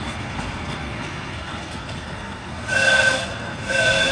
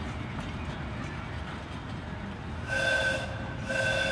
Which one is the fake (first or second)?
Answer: first